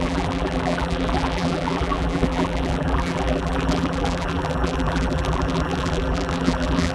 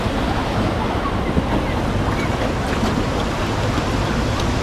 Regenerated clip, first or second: first